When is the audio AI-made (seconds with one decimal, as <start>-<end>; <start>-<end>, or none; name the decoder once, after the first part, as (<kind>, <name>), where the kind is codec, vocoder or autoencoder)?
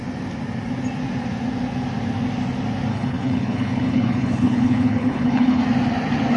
2.9-5.6 (codec, HILCodec)